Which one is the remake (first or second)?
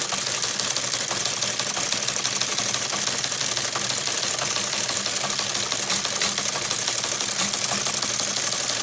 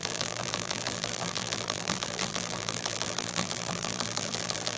second